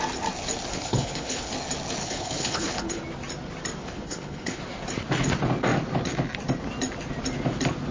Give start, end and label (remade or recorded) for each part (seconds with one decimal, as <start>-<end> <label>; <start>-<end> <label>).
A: 0.0-0.7 recorded; 0.7-1.5 remade; 1.5-2.0 recorded; 2.0-3.0 remade; 3.0-3.8 recorded; 3.8-4.6 remade; 4.6-7.9 recorded